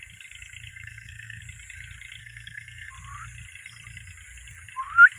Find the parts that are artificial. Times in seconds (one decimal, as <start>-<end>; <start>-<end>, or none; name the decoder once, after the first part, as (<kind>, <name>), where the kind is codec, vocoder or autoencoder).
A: 0.7-1.4 (codec, SNAC); 2.2-2.9